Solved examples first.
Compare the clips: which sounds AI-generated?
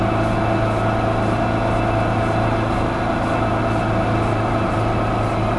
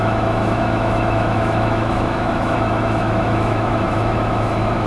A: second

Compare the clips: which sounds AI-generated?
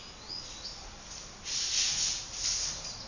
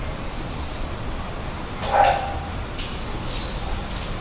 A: second